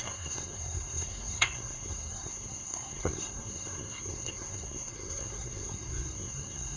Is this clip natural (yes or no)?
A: no